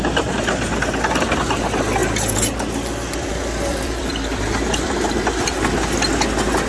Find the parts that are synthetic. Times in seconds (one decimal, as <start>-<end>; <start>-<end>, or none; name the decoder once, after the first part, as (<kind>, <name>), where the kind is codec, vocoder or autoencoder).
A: 3.7-4.9 (vocoder, BigVGAN v2)